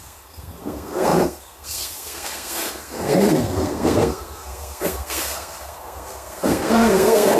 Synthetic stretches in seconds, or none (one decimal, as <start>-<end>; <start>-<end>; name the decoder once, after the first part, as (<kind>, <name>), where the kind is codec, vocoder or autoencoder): 0.0-7.4 (codec, SNAC)